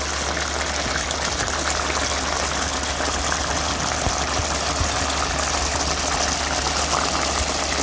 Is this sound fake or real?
real